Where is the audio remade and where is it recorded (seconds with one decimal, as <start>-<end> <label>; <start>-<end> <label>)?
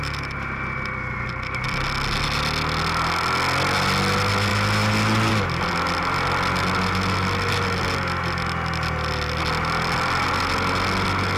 0.0-11.4 recorded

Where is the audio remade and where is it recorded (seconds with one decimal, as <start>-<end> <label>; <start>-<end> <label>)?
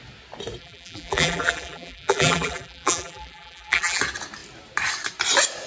0.0-0.6 recorded; 0.6-4.0 remade; 4.0-5.7 recorded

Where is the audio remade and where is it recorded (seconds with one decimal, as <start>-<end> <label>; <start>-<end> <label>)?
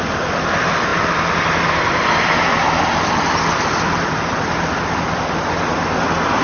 0.0-6.4 recorded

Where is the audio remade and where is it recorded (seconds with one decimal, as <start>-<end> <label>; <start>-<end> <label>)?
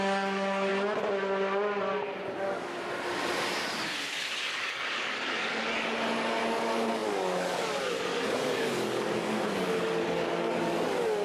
0.0-0.7 remade; 0.7-4.1 recorded; 4.1-11.2 remade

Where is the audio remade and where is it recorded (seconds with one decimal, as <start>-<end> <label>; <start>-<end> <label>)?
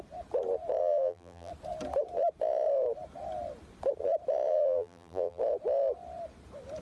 0.0-0.8 recorded; 0.8-1.5 remade; 1.5-4.5 recorded; 4.5-5.4 remade; 5.4-6.8 recorded